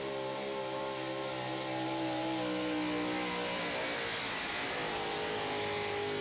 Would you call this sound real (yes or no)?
yes